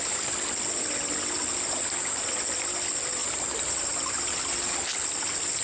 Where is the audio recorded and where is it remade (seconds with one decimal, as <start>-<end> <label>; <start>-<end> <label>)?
0.0-3.2 recorded; 3.2-4.4 remade; 4.4-5.6 recorded